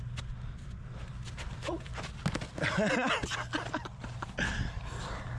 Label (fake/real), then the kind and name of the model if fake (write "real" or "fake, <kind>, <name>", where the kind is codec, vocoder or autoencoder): real